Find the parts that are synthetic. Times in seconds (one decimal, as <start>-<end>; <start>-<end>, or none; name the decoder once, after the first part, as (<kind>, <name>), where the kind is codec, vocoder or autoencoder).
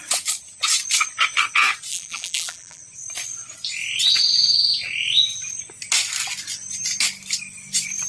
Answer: 1.9-2.8 (vocoder, BigVGAN v2)